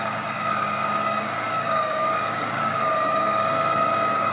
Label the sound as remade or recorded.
remade